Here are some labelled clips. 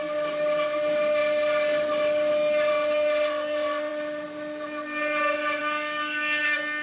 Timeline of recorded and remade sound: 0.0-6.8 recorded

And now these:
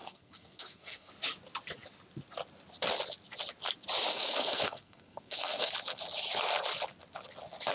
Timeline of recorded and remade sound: 0.0-1.1 remade; 1.1-4.1 recorded; 4.1-5.7 remade; 5.7-7.7 recorded

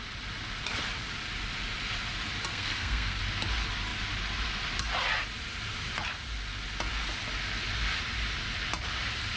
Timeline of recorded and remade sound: 0.0-2.5 recorded; 2.5-3.2 remade; 3.2-9.4 recorded